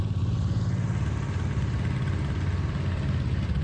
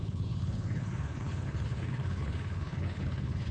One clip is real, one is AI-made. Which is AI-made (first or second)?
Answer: second